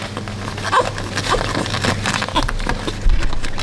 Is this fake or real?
real